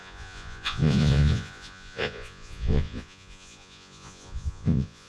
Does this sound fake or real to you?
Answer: fake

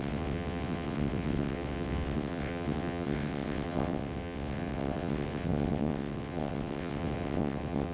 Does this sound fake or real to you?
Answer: fake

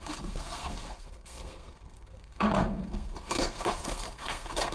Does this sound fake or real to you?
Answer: fake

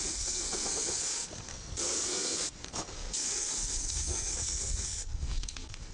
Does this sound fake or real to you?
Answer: fake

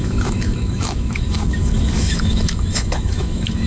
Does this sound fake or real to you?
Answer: fake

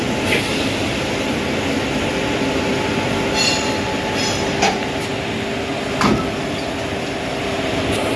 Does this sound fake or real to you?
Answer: real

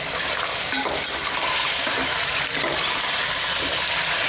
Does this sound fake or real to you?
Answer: real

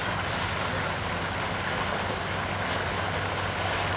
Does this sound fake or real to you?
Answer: real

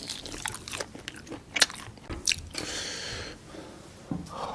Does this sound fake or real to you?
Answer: fake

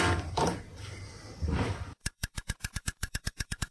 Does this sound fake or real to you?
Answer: fake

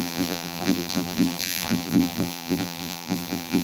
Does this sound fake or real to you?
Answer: fake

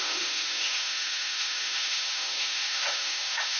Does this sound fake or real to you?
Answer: fake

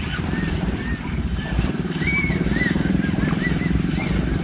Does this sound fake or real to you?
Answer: real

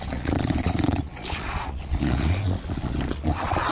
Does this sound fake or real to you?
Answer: fake